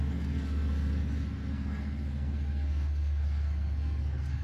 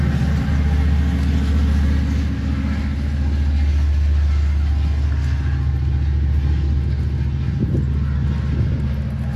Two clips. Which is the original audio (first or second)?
second